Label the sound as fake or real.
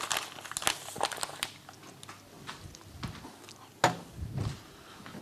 real